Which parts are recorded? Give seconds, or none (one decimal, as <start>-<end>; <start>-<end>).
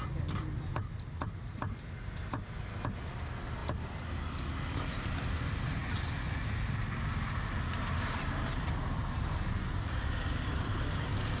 0.0-11.4